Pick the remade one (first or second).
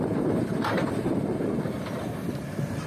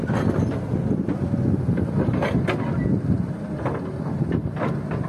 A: first